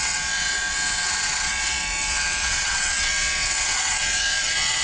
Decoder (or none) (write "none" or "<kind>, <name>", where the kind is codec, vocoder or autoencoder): vocoder, WaveNeXt